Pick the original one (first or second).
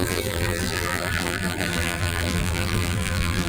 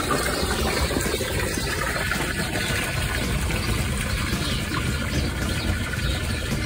second